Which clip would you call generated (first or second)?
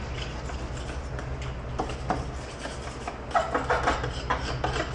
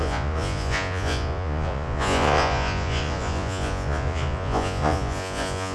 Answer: second